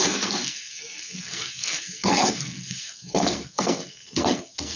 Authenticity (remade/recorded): remade